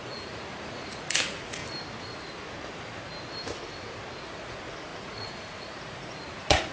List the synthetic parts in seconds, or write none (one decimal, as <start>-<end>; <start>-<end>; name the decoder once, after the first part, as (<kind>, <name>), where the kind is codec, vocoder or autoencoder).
0.0-1.6 (vocoder, Vocos); 4.2-6.7